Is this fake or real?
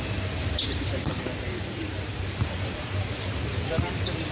fake